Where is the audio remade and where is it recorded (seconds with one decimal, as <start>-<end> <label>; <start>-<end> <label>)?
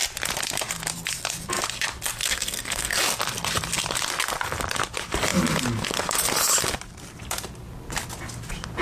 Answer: 0.0-2.2 recorded; 2.2-3.0 remade; 3.0-8.8 recorded